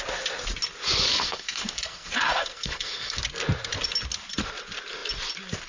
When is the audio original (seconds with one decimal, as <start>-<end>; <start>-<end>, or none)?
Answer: 0.0-1.1; 3.2-5.7